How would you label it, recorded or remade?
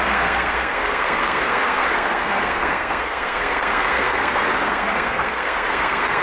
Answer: remade